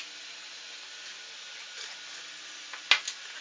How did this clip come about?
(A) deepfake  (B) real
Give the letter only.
B